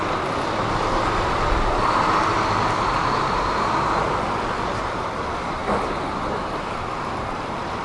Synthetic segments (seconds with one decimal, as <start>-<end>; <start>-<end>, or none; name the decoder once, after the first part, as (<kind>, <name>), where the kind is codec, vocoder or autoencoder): none